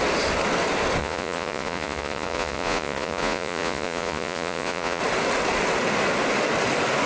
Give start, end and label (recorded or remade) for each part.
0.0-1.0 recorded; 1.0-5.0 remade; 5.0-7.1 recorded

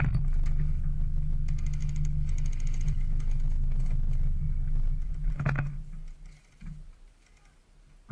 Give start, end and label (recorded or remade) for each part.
0.0-8.1 recorded

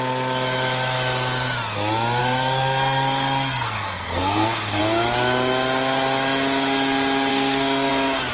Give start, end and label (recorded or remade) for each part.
0.0-2.2 recorded; 2.2-4.8 remade; 4.8-7.3 recorded; 7.3-7.9 remade; 7.9-8.3 recorded

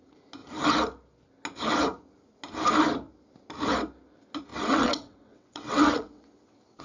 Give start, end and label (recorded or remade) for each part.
0.0-4.5 recorded; 4.5-6.8 remade